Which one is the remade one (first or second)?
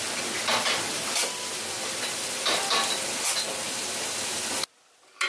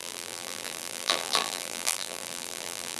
second